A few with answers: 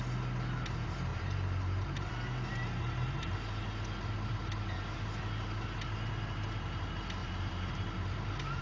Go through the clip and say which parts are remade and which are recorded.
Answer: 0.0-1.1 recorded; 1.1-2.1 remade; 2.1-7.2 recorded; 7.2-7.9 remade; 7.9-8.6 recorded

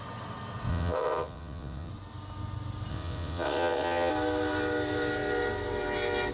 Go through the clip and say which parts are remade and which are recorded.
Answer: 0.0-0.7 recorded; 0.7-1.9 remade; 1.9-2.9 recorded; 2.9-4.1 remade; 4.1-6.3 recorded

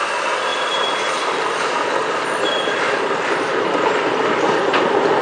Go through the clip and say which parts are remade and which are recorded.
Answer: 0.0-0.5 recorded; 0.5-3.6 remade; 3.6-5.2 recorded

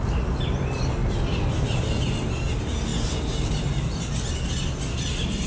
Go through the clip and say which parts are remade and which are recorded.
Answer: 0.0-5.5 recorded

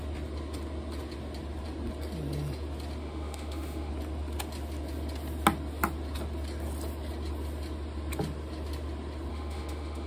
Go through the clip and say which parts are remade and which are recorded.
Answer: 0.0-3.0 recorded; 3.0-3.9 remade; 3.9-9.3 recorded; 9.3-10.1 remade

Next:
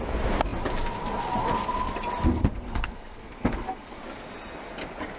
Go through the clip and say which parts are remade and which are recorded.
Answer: 0.0-2.3 recorded; 2.3-4.0 remade; 4.0-5.2 recorded